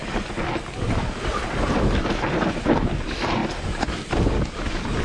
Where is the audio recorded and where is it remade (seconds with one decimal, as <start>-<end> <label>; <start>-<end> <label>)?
0.0-5.0 recorded